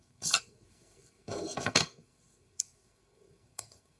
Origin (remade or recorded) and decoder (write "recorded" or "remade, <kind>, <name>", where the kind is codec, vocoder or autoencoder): remade, codec, SNAC